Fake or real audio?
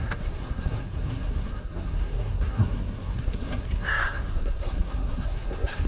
fake